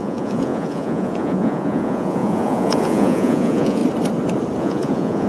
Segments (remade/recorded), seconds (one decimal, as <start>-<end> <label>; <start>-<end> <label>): 0.0-3.8 remade; 3.8-4.6 recorded; 4.6-5.3 remade